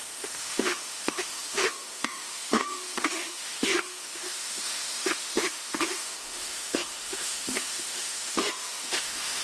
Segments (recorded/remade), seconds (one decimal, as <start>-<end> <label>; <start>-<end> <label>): 0.0-9.4 remade